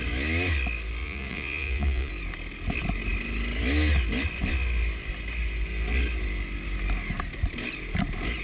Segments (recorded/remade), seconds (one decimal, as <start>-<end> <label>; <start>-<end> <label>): 0.0-1.0 recorded; 1.0-2.1 remade; 2.1-8.4 recorded